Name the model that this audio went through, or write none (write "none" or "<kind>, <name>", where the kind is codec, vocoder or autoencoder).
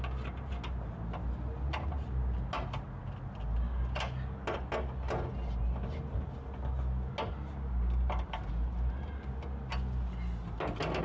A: none